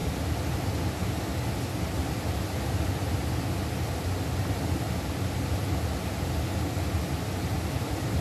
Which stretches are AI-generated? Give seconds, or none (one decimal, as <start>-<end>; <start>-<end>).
none